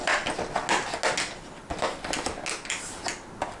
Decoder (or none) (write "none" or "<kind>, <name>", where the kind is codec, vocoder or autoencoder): none